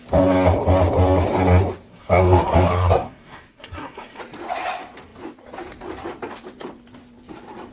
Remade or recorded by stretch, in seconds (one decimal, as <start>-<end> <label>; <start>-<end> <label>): 0.0-1.9 recorded; 1.9-4.2 remade; 4.2-7.7 recorded